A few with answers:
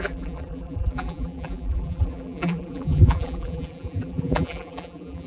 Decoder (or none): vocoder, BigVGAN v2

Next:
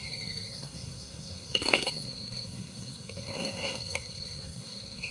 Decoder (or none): codec, SNAC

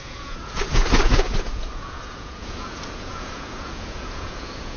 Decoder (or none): vocoder, Vocos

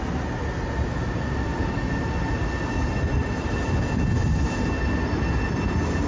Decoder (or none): none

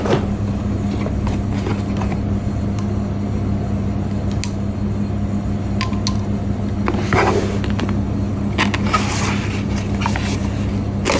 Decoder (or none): none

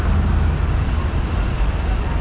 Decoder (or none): none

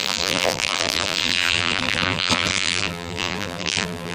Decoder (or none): vocoder, BigVGAN v2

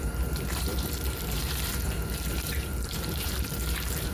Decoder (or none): vocoder, BigVGAN v2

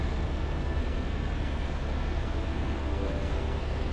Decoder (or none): codec, SNAC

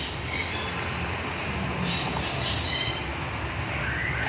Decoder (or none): none